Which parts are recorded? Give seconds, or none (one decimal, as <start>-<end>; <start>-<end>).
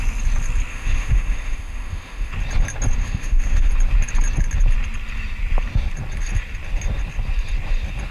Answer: 0.0-0.7; 2.3-3.0; 3.7-8.1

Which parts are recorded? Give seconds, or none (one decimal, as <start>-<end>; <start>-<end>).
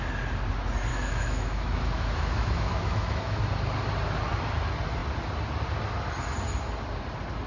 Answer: 0.0-0.9; 3.4-7.5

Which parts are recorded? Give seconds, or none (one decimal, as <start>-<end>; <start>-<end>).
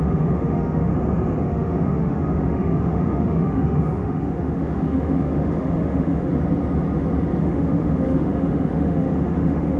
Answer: 0.9-1.4; 6.3-7.4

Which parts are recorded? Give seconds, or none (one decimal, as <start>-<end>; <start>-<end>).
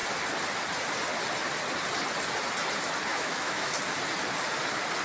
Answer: 0.0-3.1; 3.7-5.0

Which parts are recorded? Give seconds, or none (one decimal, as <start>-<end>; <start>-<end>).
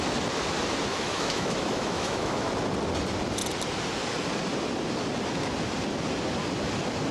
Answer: 0.0-0.9; 2.5-7.1